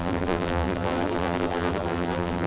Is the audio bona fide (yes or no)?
no